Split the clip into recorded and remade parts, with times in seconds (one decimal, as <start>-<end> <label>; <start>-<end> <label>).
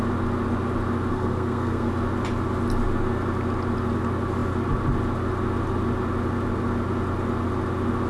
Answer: 0.0-1.1 recorded; 1.1-1.9 remade; 1.9-8.1 recorded